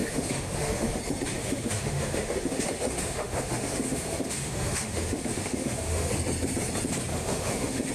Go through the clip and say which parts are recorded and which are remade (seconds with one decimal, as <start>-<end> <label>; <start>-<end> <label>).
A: 0.0-1.0 remade; 1.0-1.4 recorded; 1.4-6.1 remade; 6.1-7.1 recorded; 7.1-7.9 remade